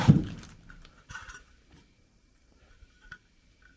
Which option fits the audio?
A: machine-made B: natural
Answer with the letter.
A